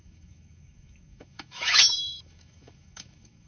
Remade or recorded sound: remade